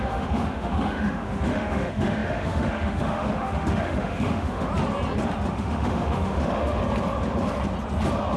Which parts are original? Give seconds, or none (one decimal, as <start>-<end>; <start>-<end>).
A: 4.7-5.5; 6.8-8.4